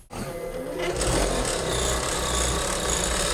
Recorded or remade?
recorded